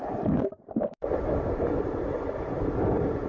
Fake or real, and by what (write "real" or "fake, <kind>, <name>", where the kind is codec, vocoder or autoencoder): real